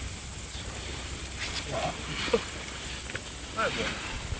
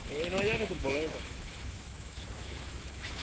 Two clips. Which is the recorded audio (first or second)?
first